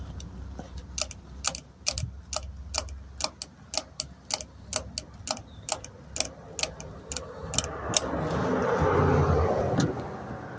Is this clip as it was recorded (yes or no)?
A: yes